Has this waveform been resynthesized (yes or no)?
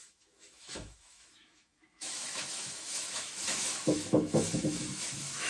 yes